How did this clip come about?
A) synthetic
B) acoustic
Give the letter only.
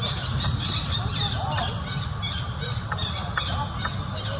B